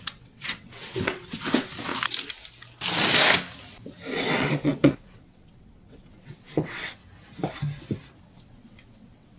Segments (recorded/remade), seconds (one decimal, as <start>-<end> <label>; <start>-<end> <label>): 0.0-1.9 remade; 1.9-4.1 recorded; 4.1-7.0 remade; 7.0-8.2 recorded; 8.2-9.4 remade